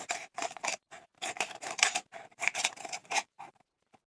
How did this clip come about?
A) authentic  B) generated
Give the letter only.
B